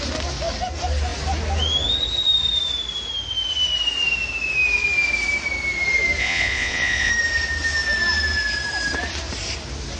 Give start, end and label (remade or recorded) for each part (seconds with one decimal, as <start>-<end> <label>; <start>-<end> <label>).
0.0-6.2 recorded; 6.2-7.1 remade; 7.1-10.0 recorded